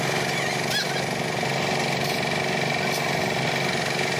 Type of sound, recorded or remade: recorded